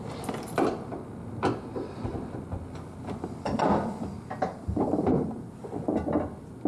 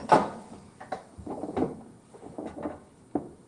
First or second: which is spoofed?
second